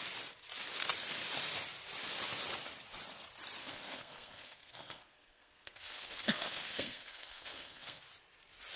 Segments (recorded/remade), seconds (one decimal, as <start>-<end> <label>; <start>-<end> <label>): 0.0-3.6 recorded; 3.6-8.0 remade; 8.0-8.8 recorded